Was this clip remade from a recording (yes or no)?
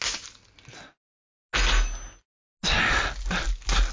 no